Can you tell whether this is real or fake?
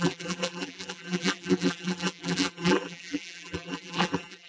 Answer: fake